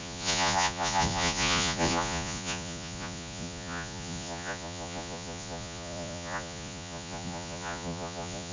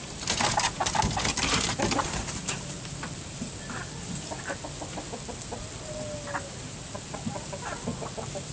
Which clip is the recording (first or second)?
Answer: second